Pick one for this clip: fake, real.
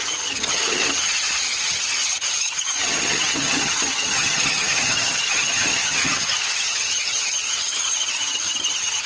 fake